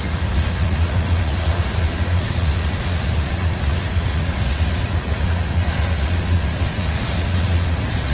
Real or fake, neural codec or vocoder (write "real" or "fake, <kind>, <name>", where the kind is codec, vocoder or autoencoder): fake, vocoder, Vocos